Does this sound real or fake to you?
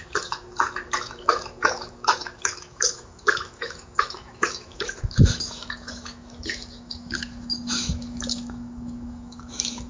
fake